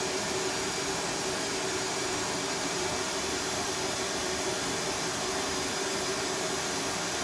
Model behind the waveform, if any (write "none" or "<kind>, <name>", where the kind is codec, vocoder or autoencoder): none